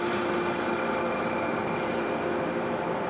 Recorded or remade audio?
recorded